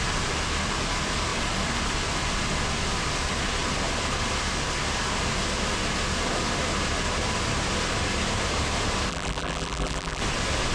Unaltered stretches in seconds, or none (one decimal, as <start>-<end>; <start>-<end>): 0.0-9.1; 10.2-10.7

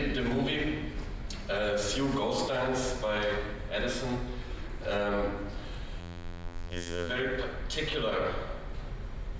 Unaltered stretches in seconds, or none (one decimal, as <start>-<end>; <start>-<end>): 0.0-6.0; 7.1-9.4

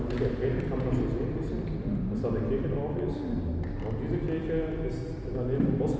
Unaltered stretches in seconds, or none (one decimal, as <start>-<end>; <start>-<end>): 0.0-4.9; 5.6-6.0

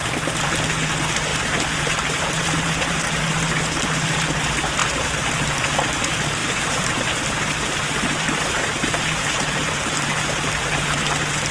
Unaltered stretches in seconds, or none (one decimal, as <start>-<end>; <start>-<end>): 0.0-1.3; 3.2-4.8; 5.5-6.4; 11.0-11.5

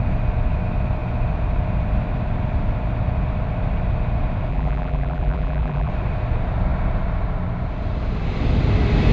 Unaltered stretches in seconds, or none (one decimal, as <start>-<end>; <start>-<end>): 0.0-4.5; 5.9-9.1

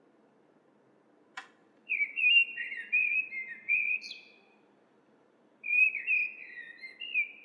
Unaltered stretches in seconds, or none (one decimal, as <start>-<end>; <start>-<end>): 0.0-1.6; 6.0-7.4